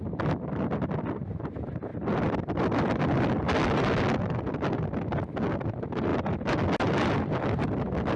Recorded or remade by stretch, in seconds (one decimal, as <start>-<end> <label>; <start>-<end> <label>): 0.0-8.2 recorded